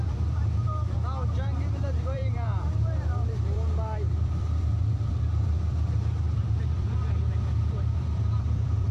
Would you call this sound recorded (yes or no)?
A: no